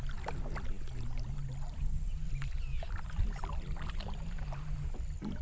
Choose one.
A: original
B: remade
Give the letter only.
A